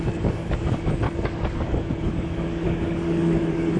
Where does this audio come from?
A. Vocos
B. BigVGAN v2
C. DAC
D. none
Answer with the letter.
C